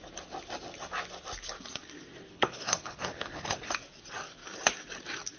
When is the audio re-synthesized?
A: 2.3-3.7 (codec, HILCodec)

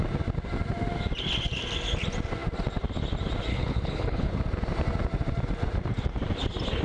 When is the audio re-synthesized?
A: 3.5-4.3 (codec, HILCodec)

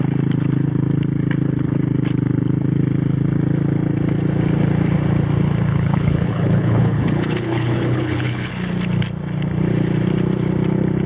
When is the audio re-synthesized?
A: 5.7-8.5 (codec, HILCodec)

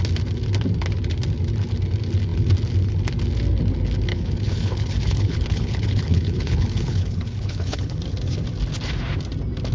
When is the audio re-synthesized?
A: 4.1-8.0 (codec, HILCodec)

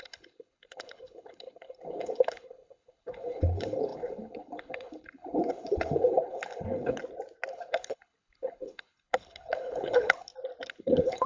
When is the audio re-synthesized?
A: 0.0-7.0 (codec, HILCodec); 7.5-10.3; 10.8-11.3